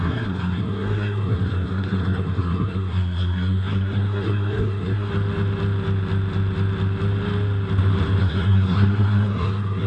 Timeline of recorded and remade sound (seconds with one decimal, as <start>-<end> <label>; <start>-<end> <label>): 0.0-5.1 remade; 5.1-8.2 recorded; 8.2-9.9 remade